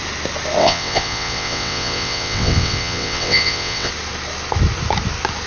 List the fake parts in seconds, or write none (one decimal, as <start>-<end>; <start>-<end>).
0.6-3.9